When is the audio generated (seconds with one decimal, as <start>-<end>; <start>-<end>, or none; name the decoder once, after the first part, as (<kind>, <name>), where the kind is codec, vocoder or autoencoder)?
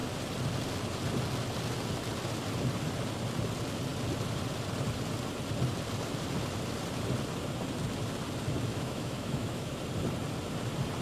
8.7-9.8 (autoencoder, DAC-VAE)